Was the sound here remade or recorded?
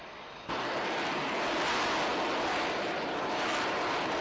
recorded